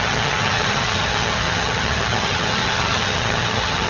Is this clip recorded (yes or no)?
no